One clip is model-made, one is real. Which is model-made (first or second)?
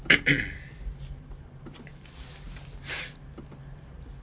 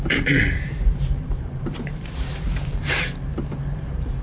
second